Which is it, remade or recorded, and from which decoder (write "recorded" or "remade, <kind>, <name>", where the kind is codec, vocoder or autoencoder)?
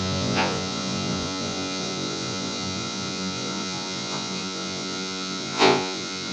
remade, vocoder, Vocos